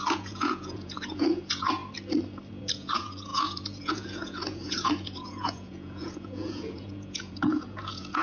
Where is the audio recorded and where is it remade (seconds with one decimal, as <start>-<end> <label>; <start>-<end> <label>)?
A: 0.0-1.8 remade; 1.8-2.5 recorded; 2.5-8.2 remade